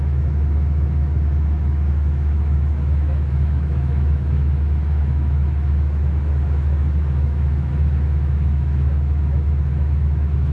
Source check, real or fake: fake